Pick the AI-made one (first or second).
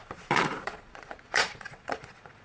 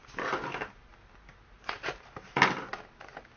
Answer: first